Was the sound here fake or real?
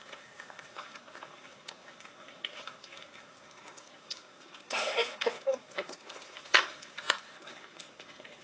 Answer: fake